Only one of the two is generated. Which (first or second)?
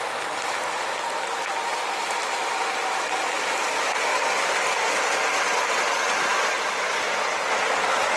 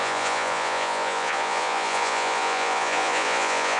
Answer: second